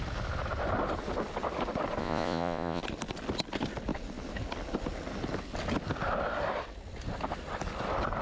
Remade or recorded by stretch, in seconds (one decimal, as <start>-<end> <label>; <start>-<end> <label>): 0.0-2.0 recorded; 2.0-2.8 remade; 2.8-8.2 recorded